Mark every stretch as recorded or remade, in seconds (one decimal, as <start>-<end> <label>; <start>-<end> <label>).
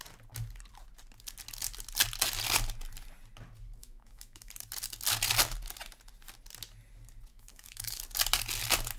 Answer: 0.0-3.8 recorded; 3.8-4.5 remade; 4.5-7.3 recorded; 7.3-8.0 remade; 8.0-9.0 recorded